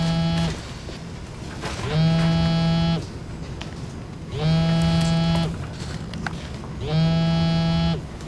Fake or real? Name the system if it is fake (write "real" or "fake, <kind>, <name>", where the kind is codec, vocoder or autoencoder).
real